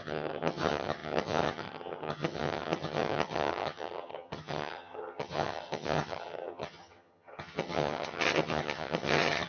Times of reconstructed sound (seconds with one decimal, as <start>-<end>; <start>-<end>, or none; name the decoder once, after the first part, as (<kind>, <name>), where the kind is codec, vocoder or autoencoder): 0.0-9.5 (vocoder, HiFi-GAN)